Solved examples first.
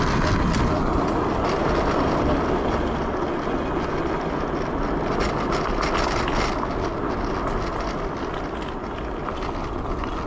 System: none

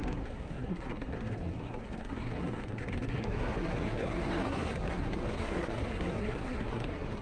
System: codec, SNAC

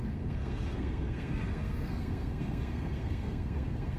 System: codec, SNAC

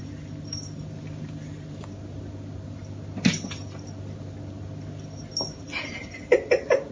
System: none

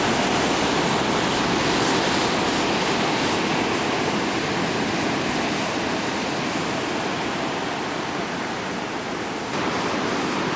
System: none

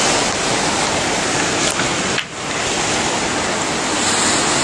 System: none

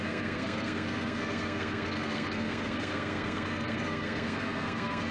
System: codec, SNAC